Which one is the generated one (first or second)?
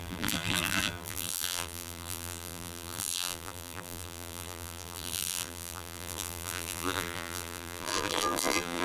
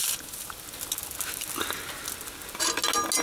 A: first